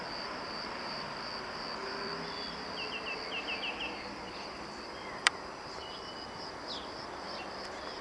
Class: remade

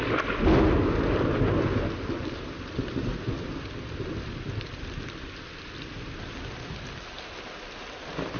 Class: recorded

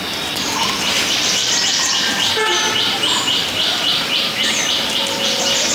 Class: remade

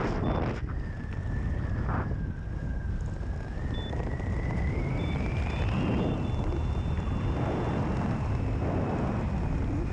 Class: recorded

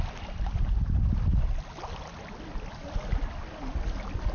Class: recorded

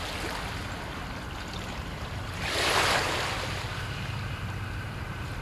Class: remade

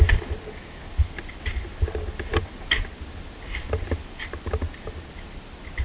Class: recorded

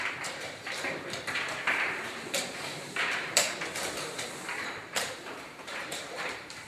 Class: remade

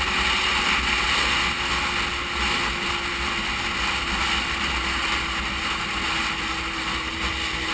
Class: recorded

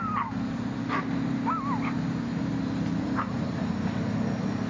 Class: recorded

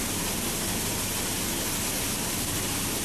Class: recorded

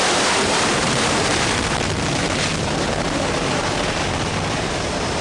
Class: remade